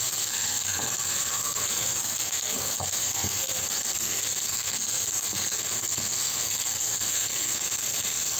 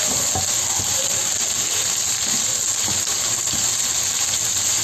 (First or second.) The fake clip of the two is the first